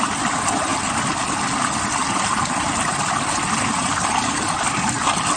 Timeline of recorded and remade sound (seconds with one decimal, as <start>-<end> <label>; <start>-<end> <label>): 0.0-5.4 recorded